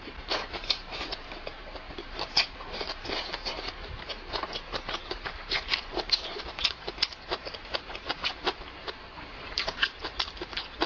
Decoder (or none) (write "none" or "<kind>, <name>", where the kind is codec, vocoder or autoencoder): vocoder, BigVGAN v2